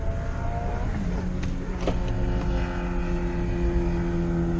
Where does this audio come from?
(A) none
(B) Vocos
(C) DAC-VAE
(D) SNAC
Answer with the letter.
A